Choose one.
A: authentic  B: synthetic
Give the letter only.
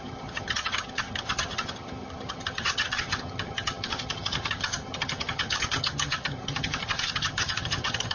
B